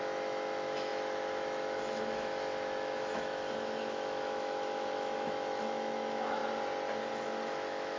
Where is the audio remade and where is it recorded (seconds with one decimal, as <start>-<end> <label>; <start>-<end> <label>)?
0.0-6.4 remade; 6.4-7.1 recorded; 7.1-8.0 remade